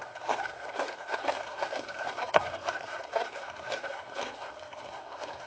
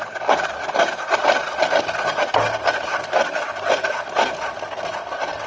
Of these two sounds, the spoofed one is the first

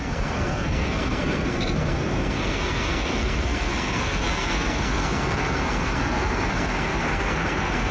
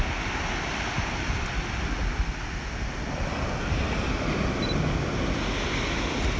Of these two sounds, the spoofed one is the first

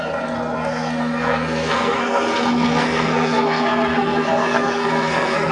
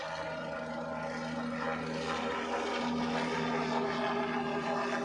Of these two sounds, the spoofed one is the first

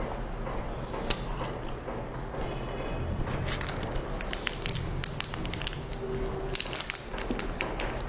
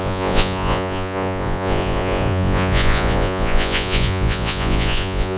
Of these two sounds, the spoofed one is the second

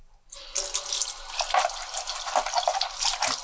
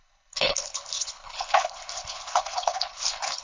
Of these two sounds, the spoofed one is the second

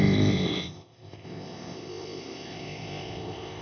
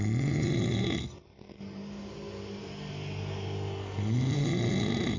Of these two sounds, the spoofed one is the first